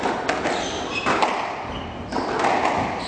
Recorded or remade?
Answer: recorded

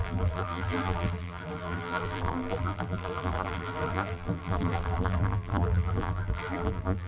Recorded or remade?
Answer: remade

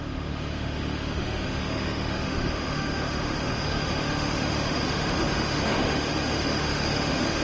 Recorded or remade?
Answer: remade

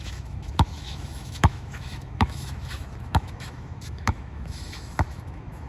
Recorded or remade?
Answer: remade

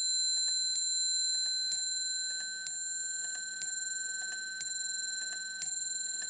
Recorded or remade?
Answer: recorded